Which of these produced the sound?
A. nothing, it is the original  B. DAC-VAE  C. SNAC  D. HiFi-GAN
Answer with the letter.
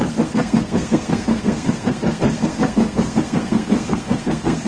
C